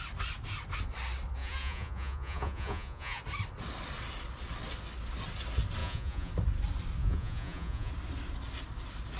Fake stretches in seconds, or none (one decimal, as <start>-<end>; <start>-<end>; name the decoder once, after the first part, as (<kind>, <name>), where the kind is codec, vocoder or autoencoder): 1.4-3.2 (vocoder, Vocos); 5.8-6.3; 7.0-7.9